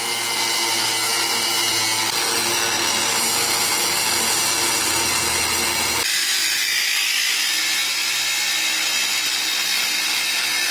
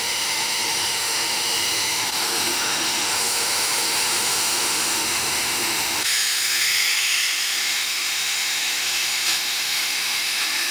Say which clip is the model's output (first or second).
second